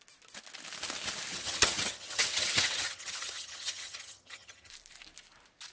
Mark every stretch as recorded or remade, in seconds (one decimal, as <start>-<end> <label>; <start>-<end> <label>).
0.0-1.3 recorded; 1.3-4.7 remade; 4.7-5.7 recorded